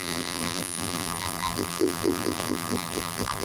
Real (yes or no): no